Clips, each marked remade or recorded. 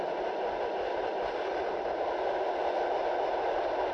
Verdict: recorded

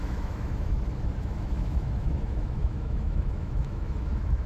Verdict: remade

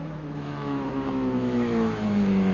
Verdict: remade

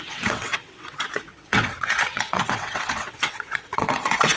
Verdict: remade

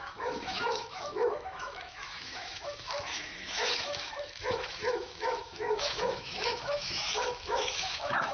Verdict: remade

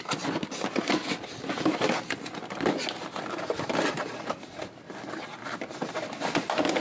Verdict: recorded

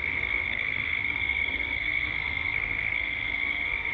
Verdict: remade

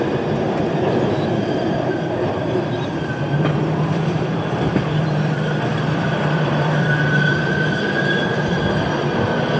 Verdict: remade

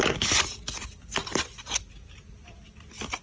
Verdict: recorded